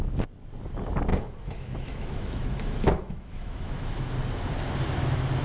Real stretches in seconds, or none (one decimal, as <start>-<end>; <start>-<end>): 0.0-1.1; 4.1-5.4